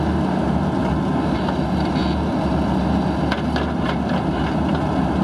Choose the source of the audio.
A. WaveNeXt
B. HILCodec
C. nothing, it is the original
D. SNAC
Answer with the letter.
C